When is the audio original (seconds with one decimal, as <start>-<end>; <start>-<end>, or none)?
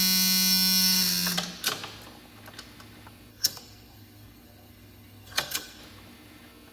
0.0-3.3; 5.8-6.7